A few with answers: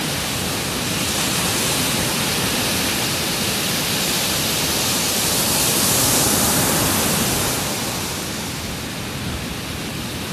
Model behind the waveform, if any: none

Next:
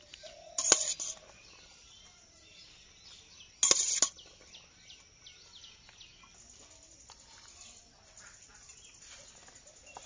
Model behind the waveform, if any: none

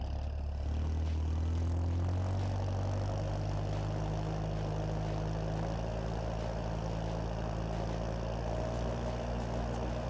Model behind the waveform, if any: none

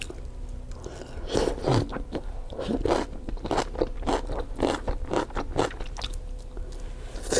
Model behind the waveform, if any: none